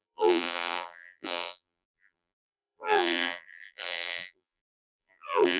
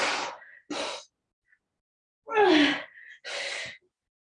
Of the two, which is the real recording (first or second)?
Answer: second